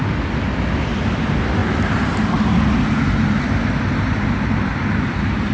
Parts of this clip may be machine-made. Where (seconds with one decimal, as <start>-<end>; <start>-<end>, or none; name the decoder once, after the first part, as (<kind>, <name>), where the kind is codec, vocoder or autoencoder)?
none